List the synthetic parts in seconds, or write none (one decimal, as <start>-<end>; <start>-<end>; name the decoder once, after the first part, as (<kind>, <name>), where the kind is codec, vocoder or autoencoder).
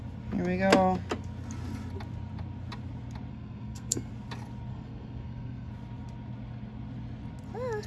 3.3-4.1 (codec, SNAC); 4.7-5.7